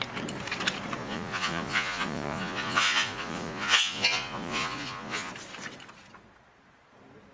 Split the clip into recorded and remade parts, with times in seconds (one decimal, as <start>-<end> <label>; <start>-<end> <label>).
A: 0.0-1.0 recorded; 1.0-5.3 remade; 5.3-7.3 recorded